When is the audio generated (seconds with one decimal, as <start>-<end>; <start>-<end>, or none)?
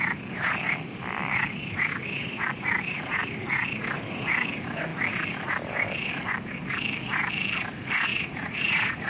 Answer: 8.1-9.1